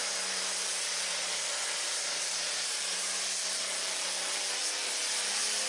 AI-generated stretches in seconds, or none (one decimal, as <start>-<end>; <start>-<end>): 0.0-3.4